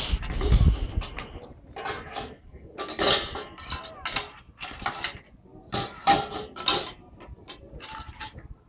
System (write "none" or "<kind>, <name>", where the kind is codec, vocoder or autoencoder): none